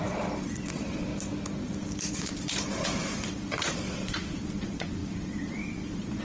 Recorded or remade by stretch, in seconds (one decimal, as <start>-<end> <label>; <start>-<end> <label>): 0.0-1.1 remade; 1.1-2.1 recorded; 2.1-6.2 remade